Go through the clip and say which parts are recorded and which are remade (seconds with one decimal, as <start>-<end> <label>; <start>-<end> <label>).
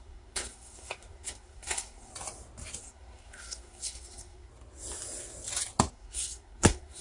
0.0-2.1 remade; 2.1-2.8 recorded; 2.8-4.5 remade; 4.5-5.9 recorded; 5.9-7.0 remade